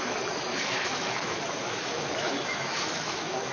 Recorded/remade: remade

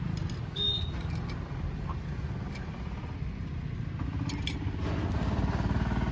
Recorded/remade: recorded